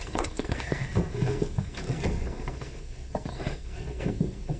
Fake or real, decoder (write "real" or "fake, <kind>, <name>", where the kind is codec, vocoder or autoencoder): fake, codec, SNAC